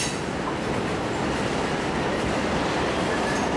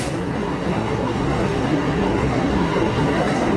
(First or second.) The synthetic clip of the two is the second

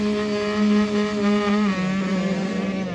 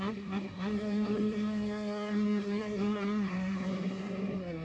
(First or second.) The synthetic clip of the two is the second